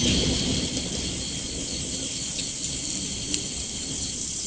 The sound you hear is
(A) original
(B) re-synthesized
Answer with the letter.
A